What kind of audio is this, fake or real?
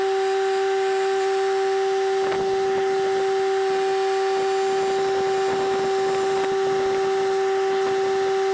real